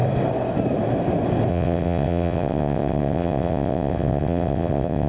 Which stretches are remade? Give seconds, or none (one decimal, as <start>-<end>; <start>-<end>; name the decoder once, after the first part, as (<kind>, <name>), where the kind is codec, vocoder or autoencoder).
1.5-5.1 (vocoder, WaveNeXt)